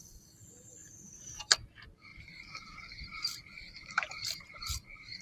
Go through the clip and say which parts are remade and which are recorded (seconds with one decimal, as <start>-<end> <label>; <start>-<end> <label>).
0.0-0.8 recorded; 0.8-1.4 remade; 1.4-2.1 recorded; 2.1-5.2 remade